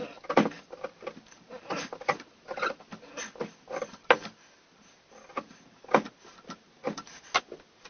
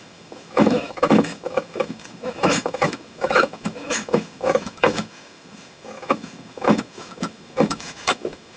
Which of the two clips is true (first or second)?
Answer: first